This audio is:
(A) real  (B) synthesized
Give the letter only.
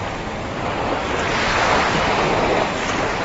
A